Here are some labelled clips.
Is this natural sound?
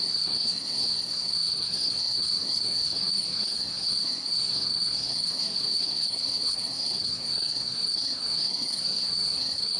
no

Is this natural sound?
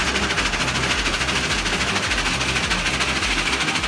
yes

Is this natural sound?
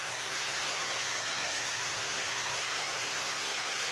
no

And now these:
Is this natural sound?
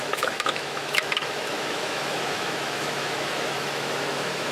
no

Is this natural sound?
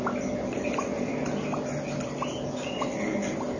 yes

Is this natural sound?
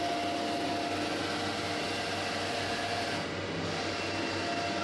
yes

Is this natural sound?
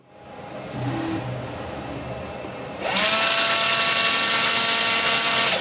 yes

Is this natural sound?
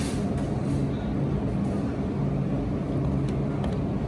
yes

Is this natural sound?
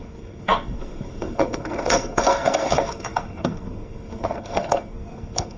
no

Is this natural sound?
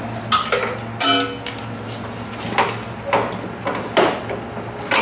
yes